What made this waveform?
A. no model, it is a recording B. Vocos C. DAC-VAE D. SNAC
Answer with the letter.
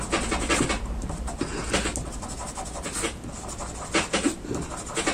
A